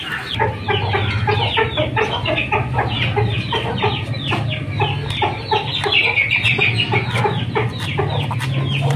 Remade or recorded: recorded